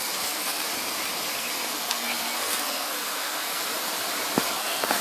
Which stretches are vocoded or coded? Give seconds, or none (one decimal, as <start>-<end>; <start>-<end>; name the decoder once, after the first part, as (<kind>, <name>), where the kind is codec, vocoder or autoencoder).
0.0-0.7 (codec, SNAC); 1.3-3.7; 4.4-5.0